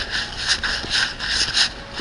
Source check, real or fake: real